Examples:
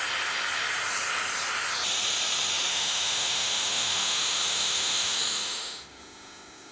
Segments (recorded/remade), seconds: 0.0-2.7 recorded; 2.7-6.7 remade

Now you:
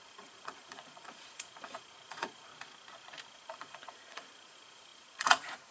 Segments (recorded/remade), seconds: 0.0-2.5 remade; 2.5-3.3 recorded; 3.3-5.7 remade

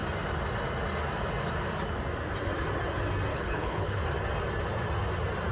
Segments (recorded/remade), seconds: 0.0-3.3 recorded; 3.3-4.0 remade; 4.0-5.5 recorded

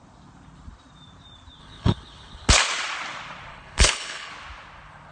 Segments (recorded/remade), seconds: 0.0-1.6 recorded; 1.6-2.5 remade; 2.5-3.5 recorded; 3.5-4.3 remade; 4.3-5.1 recorded

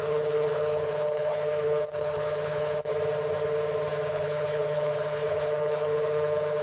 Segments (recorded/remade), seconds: 0.0-2.9 remade; 2.9-4.1 recorded; 4.1-6.6 remade